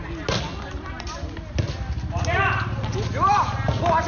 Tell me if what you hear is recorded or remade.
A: recorded